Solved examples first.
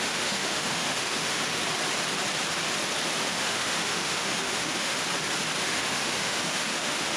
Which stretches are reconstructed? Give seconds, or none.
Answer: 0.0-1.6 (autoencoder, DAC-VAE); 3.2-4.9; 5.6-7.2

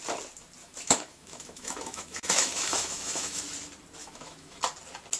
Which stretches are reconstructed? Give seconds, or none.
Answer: 0.6-3.4 (autoencoder, DAC-VAE); 4.0-4.6

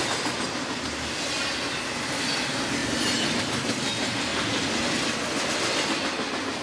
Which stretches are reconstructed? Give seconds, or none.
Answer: none

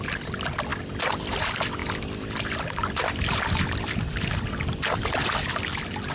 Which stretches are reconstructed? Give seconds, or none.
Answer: none

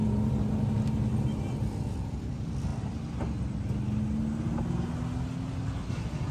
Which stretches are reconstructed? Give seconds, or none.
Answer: none

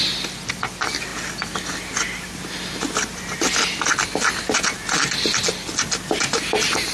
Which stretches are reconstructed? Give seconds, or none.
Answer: none

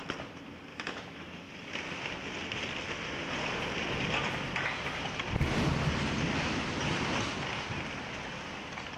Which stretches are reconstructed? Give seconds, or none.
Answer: 0.7-1.5 (autoencoder, DAC-VAE)

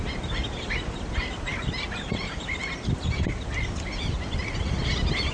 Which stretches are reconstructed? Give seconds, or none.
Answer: none